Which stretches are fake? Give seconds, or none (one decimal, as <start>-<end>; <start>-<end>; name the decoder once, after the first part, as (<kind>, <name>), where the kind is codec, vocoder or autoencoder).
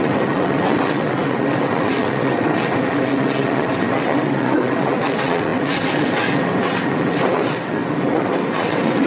0.0-9.1 (vocoder, WaveNeXt)